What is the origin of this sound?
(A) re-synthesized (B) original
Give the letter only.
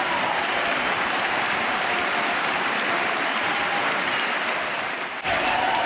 A